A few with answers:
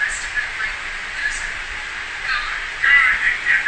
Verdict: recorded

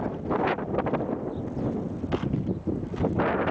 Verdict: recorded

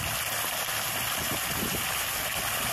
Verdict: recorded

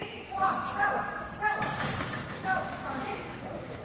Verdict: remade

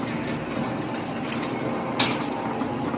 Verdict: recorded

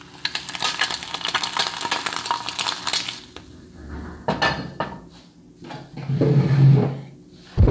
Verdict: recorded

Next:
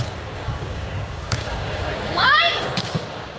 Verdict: remade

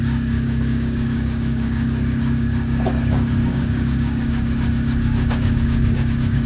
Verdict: remade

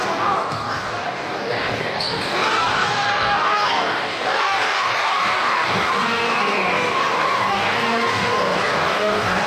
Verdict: remade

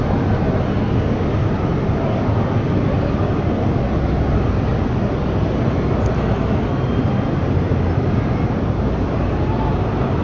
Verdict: recorded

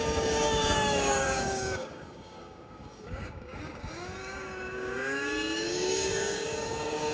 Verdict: remade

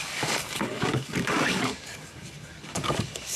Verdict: remade